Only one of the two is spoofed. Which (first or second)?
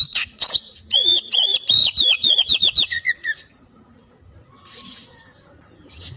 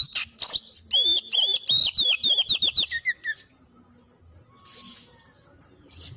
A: first